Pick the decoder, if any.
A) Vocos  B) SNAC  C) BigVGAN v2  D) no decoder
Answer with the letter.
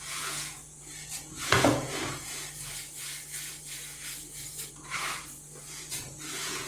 A